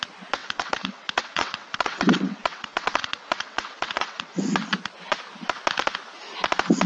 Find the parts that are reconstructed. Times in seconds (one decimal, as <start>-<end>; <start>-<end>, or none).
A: 0.4-4.5